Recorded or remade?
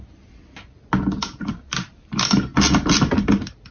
recorded